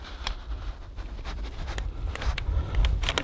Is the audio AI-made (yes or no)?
no